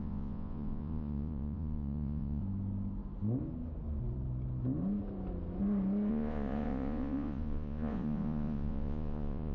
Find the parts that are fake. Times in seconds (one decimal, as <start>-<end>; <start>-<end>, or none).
0.0-2.4; 6.1-9.5